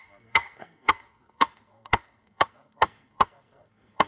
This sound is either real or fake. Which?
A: fake